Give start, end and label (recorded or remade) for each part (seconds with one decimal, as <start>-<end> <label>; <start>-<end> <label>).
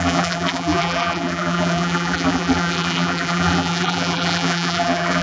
0.0-5.2 remade